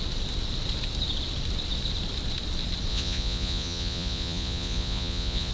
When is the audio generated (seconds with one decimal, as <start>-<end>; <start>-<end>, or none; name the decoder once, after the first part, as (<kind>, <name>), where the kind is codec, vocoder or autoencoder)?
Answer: 2.9-5.5 (vocoder, Vocos)